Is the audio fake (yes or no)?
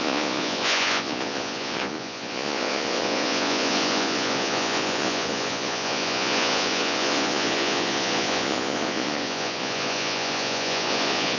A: yes